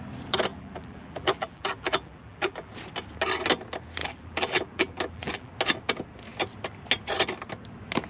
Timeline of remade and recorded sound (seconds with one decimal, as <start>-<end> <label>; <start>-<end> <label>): 0.0-0.5 recorded; 0.5-2.7 remade; 2.7-4.0 recorded; 4.0-5.5 remade; 5.5-8.1 recorded